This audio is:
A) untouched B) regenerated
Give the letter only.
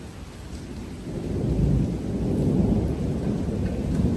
A